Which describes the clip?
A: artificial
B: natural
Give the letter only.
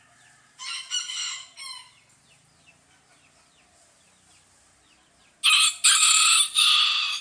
B